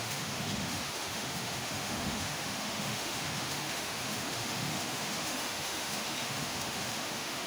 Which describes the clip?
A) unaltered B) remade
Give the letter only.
B